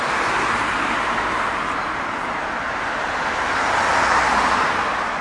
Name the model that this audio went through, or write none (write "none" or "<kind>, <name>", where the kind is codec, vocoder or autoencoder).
none